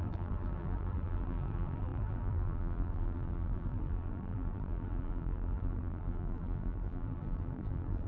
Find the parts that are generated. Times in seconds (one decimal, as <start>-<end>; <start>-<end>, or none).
0.0-8.1